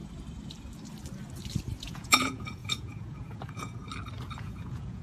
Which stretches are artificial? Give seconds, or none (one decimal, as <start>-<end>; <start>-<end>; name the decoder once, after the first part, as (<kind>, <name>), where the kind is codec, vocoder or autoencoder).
1.8-3.8 (vocoder, Vocos); 4.4-5.0